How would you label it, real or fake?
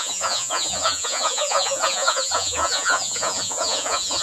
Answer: fake